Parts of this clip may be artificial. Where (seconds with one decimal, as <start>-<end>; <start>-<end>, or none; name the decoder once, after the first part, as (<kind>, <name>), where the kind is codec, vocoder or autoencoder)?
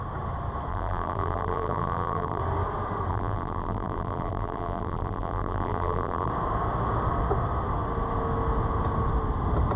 0.7-2.4 (vocoder, BigVGAN v2); 3.1-6.3